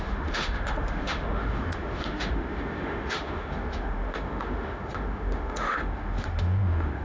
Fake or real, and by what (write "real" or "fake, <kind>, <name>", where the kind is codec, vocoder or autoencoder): fake, autoencoder, DAC-VAE